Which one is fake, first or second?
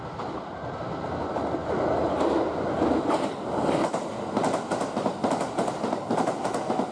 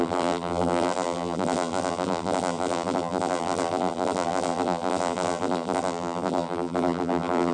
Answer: second